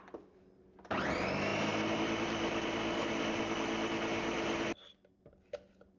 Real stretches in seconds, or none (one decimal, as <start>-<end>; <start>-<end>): 0.0-6.0